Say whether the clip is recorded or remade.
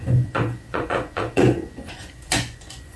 remade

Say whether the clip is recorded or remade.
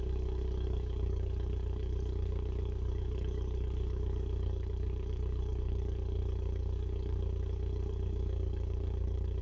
remade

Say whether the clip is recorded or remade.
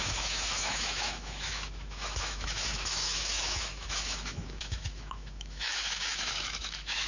remade